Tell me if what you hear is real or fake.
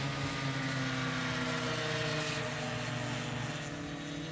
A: real